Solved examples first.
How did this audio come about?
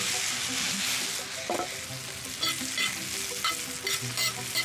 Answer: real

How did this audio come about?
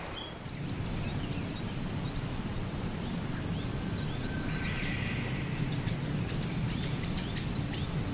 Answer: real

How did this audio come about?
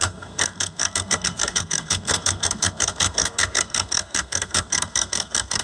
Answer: fake